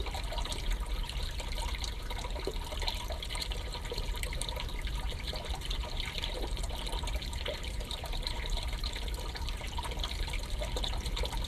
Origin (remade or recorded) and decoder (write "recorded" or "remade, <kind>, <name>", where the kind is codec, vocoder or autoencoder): remade, vocoder, BigVGAN v2